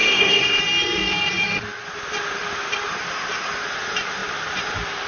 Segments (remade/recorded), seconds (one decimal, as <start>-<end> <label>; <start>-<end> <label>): 0.0-0.6 remade; 0.6-5.1 recorded